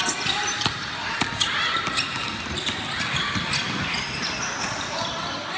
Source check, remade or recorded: recorded